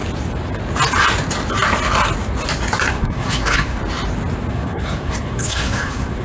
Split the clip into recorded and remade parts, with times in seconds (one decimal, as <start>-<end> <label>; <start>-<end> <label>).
0.0-2.9 recorded; 2.9-3.8 remade; 3.8-4.5 recorded; 4.5-6.2 remade